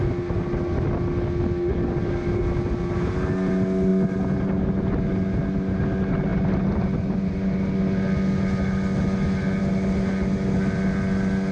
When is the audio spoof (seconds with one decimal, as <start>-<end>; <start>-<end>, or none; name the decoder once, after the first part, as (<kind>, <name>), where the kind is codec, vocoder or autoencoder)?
none

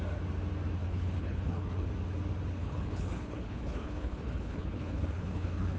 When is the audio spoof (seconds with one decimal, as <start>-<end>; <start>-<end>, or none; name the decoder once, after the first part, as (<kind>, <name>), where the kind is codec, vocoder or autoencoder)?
0.8-1.9 (codec, HILCodec); 2.6-5.8

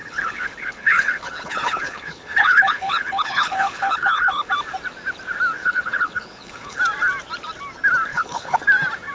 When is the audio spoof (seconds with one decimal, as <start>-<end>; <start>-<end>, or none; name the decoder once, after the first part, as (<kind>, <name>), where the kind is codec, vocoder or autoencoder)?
0.0-4.5 (codec, HILCodec); 5.6-6.8; 8.1-8.6

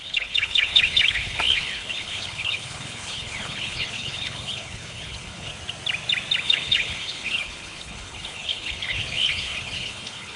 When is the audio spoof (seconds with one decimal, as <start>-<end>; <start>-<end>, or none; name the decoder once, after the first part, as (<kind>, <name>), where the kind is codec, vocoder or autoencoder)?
0.0-5.5 (codec, HILCodec); 6.4-10.4

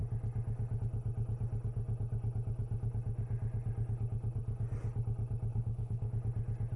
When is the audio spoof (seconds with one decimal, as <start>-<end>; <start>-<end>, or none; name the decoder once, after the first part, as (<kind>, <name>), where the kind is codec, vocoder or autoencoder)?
5.5-6.1 (codec, HILCodec)

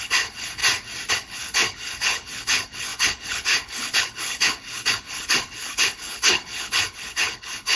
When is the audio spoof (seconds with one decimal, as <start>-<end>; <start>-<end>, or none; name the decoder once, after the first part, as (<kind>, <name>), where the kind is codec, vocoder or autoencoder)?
0.0-0.6 (codec, HILCodec); 1.1-7.8